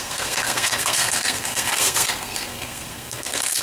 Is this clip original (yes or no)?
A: no